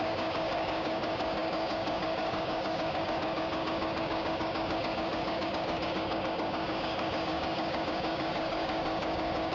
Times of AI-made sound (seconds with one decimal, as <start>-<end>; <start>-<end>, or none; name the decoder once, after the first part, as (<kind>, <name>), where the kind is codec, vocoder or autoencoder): 0.0-9.5 (codec, DAC)